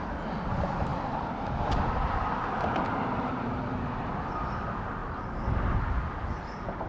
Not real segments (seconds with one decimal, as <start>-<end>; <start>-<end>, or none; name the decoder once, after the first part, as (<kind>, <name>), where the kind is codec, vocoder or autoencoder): none